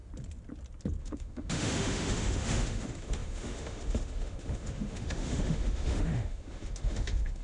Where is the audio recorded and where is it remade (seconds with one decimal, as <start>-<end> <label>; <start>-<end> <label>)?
0.0-1.0 recorded; 1.0-7.4 remade